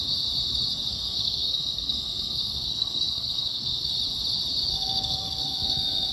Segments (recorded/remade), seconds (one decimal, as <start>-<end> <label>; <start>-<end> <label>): 0.0-0.9 recorded; 0.9-3.9 remade; 3.9-4.7 recorded; 4.7-6.1 remade